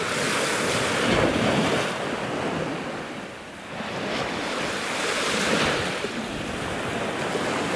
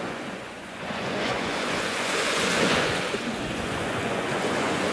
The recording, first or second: first